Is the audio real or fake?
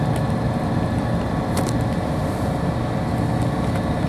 real